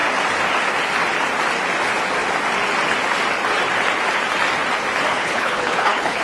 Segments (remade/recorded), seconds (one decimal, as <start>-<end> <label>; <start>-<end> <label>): 0.0-5.1 recorded; 5.1-6.2 remade